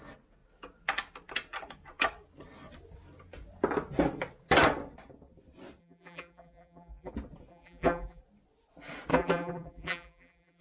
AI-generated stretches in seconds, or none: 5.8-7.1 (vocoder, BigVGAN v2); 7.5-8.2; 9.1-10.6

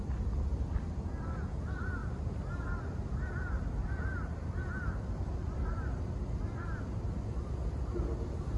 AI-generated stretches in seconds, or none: 2.0-6.8 (vocoder, BigVGAN v2)

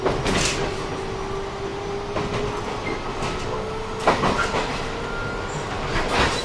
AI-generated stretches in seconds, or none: none

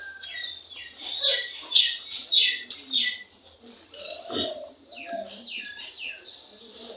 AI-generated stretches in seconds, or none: 0.0-1.1 (vocoder, BigVGAN v2); 3.0-7.0

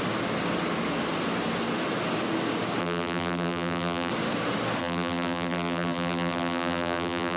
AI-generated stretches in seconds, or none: 2.8-4.1 (vocoder, BigVGAN v2); 4.8-7.4

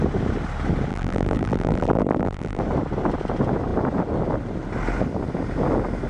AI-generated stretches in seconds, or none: 0.9-2.6 (vocoder, BigVGAN v2)

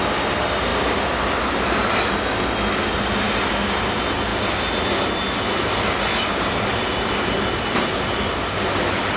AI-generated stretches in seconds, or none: none